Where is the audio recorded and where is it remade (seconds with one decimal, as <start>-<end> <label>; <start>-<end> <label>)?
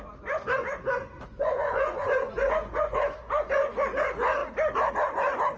0.0-1.0 recorded; 1.0-3.5 remade; 3.5-5.6 recorded